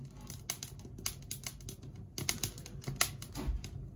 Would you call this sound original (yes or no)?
yes